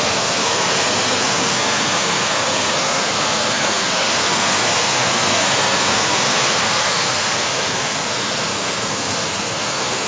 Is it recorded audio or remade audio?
remade